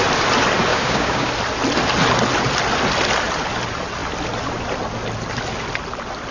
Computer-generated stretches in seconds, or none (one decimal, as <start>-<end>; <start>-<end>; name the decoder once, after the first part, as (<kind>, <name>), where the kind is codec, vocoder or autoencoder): 0.7-1.3 (codec, DAC)